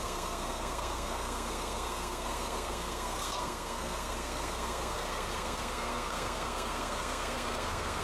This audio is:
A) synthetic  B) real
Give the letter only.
A